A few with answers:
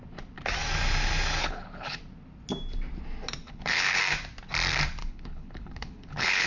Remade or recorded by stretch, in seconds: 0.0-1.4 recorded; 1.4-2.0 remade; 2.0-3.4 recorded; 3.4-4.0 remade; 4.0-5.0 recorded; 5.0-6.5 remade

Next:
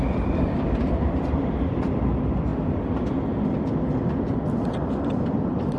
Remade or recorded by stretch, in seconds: 0.0-2.5 remade; 2.5-4.9 recorded; 4.9-5.8 remade

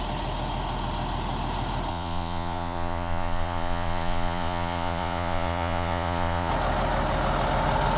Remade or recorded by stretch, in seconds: 0.0-1.9 recorded; 1.9-6.5 remade; 6.5-8.0 recorded